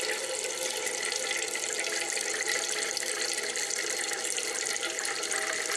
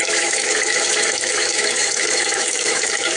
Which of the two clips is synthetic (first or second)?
second